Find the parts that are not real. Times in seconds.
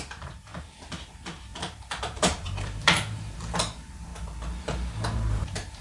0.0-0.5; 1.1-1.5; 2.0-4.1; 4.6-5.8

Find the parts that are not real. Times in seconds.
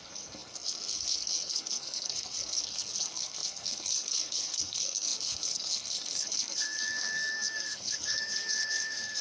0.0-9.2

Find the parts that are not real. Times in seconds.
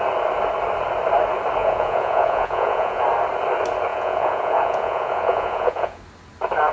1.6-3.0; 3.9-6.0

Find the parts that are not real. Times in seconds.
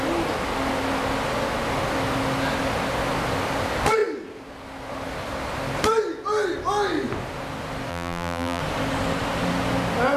7.9-8.6